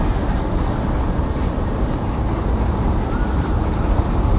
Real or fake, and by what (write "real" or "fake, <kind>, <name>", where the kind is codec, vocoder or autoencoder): real